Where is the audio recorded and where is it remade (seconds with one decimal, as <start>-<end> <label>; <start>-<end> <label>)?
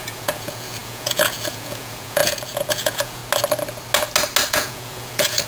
0.0-3.2 remade; 3.2-4.5 recorded; 4.5-5.5 remade